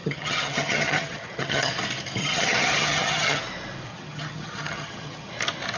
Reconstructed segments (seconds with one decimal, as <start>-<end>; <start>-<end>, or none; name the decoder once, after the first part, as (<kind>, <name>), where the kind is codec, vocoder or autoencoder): 0.0-1.7 (vocoder, HiFi-GAN); 2.2-3.4; 3.9-5.3